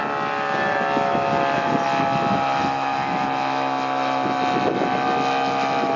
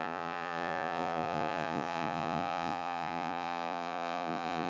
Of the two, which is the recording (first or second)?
first